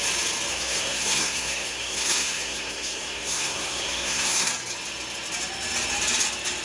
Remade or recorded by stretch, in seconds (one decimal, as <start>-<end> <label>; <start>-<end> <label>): 0.0-0.5 recorded; 0.5-4.5 remade; 4.5-6.6 recorded

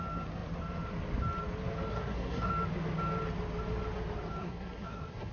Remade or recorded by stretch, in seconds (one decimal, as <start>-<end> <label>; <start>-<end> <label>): 0.0-1.9 recorded; 1.9-2.5 remade; 2.5-4.4 recorded; 4.4-5.3 remade

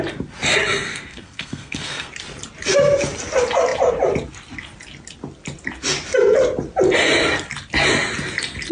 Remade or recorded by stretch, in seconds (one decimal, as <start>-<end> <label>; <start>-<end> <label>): 0.0-0.9 recorded; 0.9-2.1 remade; 2.1-8.7 recorded

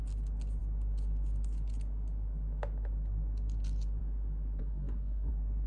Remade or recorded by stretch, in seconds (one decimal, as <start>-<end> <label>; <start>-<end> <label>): 0.0-4.6 recorded; 4.6-5.3 remade; 5.3-5.7 recorded

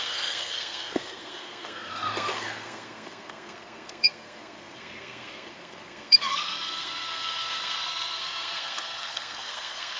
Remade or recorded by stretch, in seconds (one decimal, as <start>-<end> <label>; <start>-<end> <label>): 0.0-10.0 remade

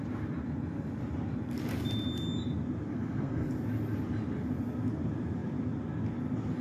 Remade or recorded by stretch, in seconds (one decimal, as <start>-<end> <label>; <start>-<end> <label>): 0.0-2.9 recorded; 2.9-3.5 remade; 3.5-6.6 recorded

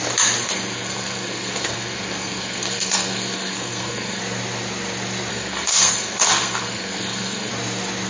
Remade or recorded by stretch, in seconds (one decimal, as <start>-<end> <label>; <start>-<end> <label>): 0.0-0.4 recorded; 0.4-4.2 remade; 4.2-5.3 recorded; 5.3-7.5 remade; 7.5-8.1 recorded

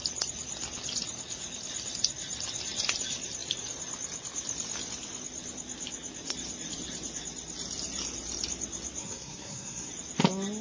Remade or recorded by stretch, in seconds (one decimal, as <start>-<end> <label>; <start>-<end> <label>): 0.0-9.0 recorded; 9.0-9.9 remade; 9.9-10.6 recorded